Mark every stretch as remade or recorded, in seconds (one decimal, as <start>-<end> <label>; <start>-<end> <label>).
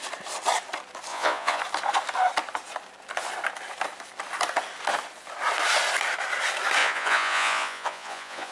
0.0-1.1 recorded; 1.1-1.6 remade; 1.6-6.8 recorded; 6.8-8.5 remade